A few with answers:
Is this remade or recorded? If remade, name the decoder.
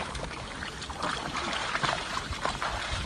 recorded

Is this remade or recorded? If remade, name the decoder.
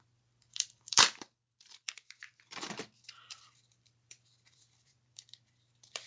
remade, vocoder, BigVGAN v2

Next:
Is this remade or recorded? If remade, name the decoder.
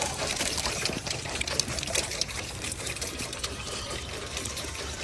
remade, vocoder, BigVGAN v2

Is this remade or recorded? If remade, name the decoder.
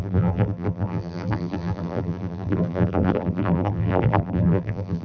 remade, vocoder, BigVGAN v2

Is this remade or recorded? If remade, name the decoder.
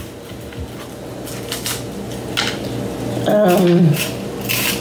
recorded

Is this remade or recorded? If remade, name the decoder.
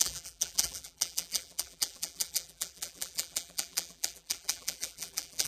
remade, vocoder, BigVGAN v2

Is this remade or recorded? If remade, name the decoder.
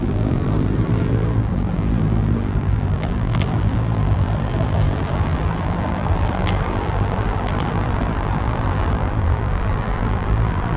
remade, vocoder, BigVGAN v2